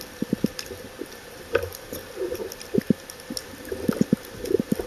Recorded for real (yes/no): yes